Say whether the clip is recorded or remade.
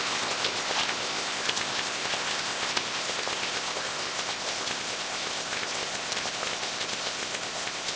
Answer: remade